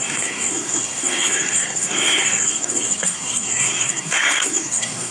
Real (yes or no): no